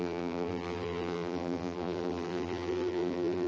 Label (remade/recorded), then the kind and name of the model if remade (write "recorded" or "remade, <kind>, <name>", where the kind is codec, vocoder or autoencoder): remade, vocoder, BigVGAN v2